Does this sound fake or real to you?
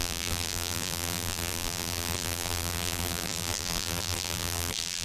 fake